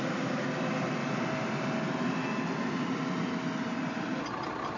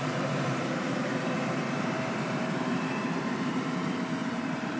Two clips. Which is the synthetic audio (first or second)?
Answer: second